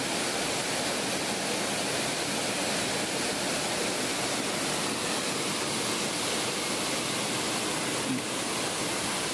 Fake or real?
real